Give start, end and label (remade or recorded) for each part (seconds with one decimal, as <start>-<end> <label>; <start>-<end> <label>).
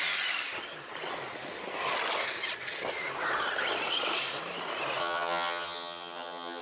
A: 0.0-5.0 recorded; 5.0-6.6 remade